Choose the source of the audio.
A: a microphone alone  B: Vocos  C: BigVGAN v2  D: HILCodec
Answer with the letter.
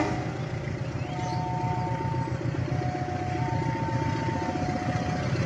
A